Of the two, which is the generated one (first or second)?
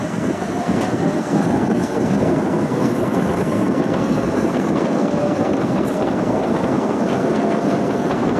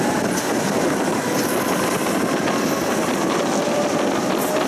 first